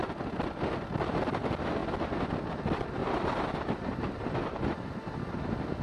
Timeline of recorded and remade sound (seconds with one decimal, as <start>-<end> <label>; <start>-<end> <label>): 0.0-3.0 recorded; 3.0-5.2 remade; 5.2-5.8 recorded